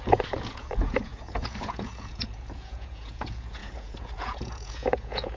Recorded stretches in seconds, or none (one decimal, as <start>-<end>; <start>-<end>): none